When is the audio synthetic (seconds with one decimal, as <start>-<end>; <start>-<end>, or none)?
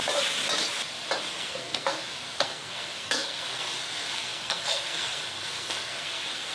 1.3-6.5